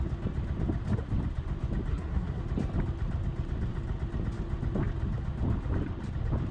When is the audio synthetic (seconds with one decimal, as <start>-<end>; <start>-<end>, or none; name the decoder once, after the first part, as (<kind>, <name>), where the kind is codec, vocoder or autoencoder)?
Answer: 1.9-2.4 (codec, SNAC)